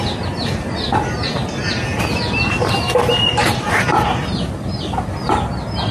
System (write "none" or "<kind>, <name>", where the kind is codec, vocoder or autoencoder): none